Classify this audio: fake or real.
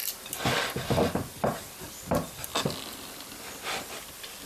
real